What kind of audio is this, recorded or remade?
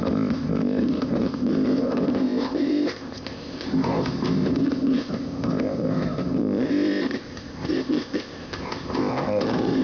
remade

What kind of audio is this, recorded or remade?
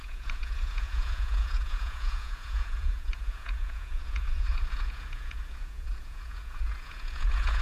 remade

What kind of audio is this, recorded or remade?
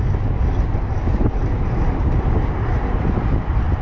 recorded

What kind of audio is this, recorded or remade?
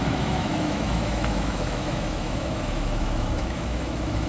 remade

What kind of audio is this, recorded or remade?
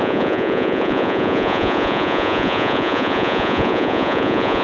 remade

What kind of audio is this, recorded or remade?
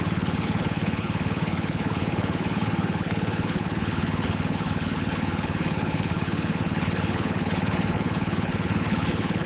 remade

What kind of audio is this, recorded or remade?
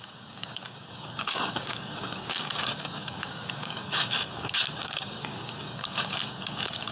remade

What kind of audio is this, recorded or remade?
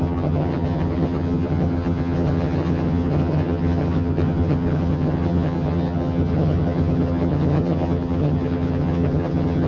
remade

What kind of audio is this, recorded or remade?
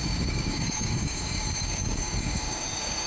remade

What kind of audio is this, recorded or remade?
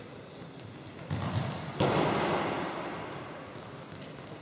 recorded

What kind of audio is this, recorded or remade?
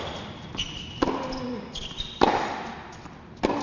recorded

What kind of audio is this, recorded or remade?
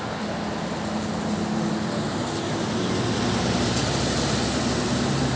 recorded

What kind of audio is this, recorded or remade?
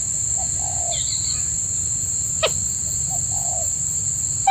recorded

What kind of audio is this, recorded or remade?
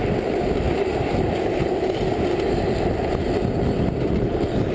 recorded